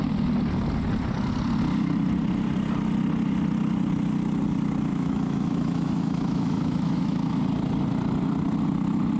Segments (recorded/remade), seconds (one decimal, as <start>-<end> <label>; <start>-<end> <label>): 0.0-4.9 recorded; 4.9-7.4 remade; 7.4-9.2 recorded